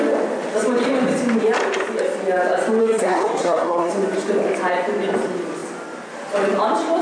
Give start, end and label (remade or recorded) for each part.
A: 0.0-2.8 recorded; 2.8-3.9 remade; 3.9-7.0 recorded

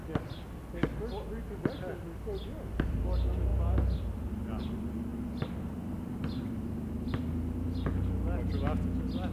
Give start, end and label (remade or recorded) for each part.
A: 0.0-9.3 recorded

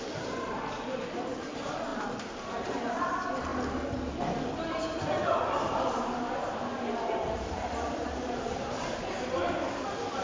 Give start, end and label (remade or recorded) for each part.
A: 0.0-3.5 remade; 3.5-5.3 recorded; 5.3-10.2 remade